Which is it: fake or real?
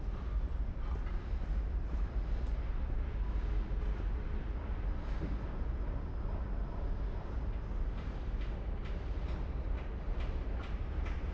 real